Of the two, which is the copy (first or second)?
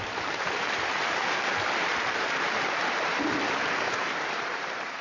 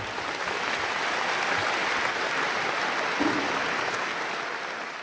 first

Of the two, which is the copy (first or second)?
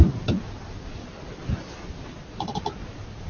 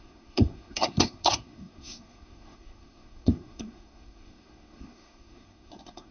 second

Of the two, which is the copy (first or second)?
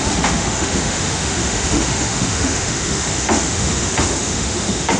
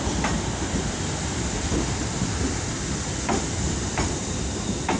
first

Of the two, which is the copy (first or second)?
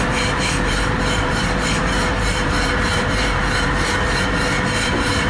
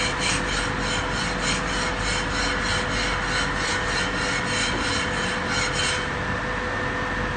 first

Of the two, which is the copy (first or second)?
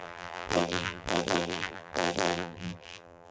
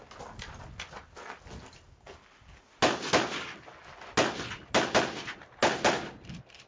first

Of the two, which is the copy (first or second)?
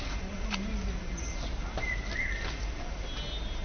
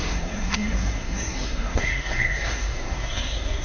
second